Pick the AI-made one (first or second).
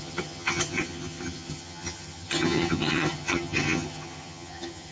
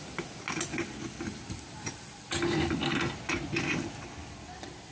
first